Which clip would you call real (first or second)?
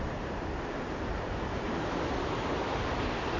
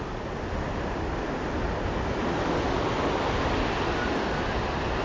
second